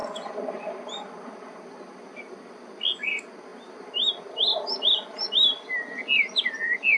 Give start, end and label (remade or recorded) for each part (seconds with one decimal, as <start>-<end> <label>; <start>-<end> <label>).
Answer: 0.0-7.0 recorded

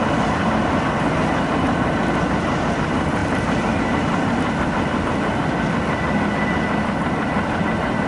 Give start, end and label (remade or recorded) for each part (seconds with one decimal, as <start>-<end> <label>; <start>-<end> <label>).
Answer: 0.0-8.1 recorded